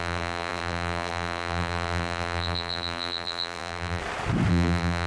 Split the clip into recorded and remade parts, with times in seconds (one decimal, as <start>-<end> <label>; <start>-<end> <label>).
0.0-4.0 remade; 4.0-4.5 recorded; 4.5-5.1 remade